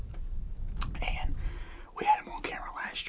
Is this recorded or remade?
recorded